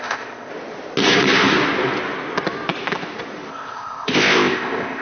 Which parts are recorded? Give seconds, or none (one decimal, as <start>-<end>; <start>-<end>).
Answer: 0.5-3.5